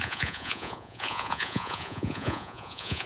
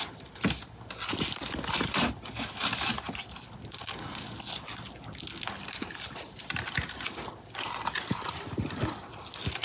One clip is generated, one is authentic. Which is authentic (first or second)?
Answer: second